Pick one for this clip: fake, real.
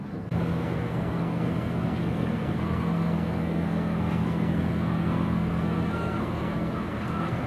fake